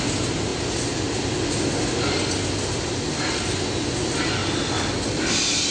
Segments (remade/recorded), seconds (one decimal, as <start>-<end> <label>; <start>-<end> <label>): 0.0-5.7 recorded